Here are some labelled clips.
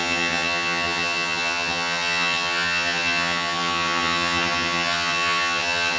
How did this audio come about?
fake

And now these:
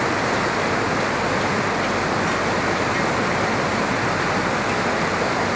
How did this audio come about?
real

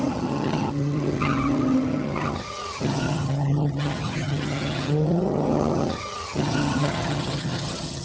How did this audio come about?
fake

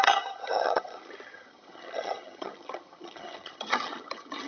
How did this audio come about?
fake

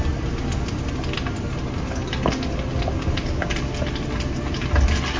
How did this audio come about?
real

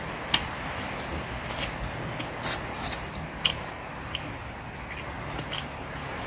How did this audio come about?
real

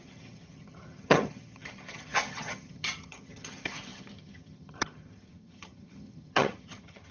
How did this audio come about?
fake